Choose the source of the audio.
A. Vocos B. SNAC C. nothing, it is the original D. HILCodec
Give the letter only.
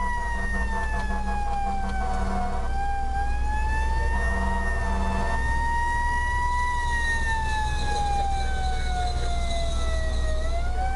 C